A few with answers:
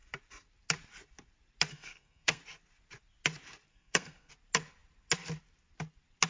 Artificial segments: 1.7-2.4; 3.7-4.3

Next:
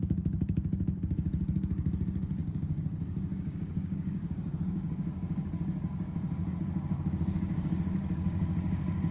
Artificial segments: 0.0-9.1

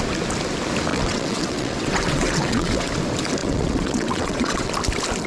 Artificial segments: 0.9-2.9; 3.4-4.7

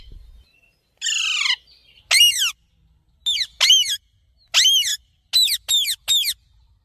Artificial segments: none

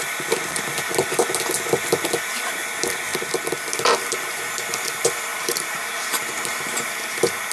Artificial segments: 5.3-6.5

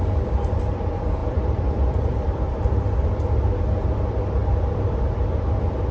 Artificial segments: 1.2-3.2; 4.4-4.9

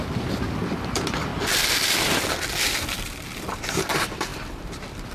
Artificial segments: 0.0-1.3; 2.5-5.1